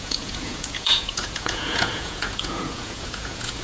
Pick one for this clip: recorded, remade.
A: remade